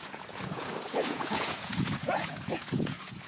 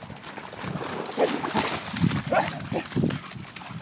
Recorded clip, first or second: second